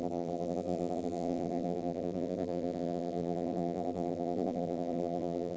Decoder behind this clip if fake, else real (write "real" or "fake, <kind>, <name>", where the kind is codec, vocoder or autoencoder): fake, vocoder, BigVGAN v2